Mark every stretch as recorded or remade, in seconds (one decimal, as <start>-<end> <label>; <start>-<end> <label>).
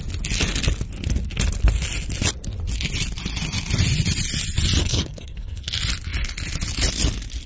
0.0-4.8 recorded; 4.8-5.6 remade; 5.6-7.5 recorded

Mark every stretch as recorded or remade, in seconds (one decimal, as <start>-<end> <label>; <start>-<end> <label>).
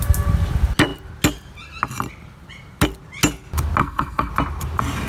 0.0-3.8 recorded; 3.8-4.3 remade; 4.3-5.1 recorded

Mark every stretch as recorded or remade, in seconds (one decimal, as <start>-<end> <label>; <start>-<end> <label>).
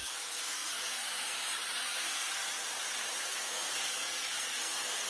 0.0-2.4 remade; 2.4-3.2 recorded; 3.2-5.1 remade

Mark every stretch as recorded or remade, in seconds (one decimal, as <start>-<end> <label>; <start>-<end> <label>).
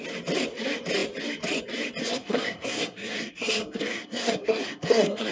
0.0-2.0 recorded; 2.0-5.3 remade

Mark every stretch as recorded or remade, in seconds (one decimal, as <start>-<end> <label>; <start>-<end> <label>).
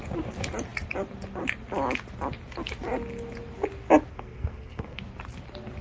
0.0-4.1 recorded; 4.1-5.0 remade; 5.0-5.8 recorded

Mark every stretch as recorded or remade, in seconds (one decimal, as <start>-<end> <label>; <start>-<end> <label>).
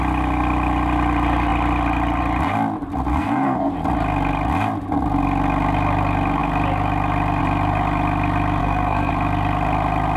0.0-3.1 recorded; 3.1-3.7 remade; 3.7-8.6 recorded; 8.6-9.1 remade; 9.1-10.2 recorded